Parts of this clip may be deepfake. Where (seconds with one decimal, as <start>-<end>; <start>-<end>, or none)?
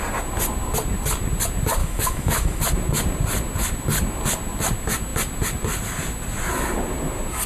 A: 1.8-2.6